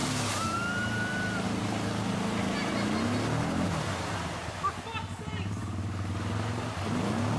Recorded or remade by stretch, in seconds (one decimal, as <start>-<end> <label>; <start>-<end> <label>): 0.0-7.4 recorded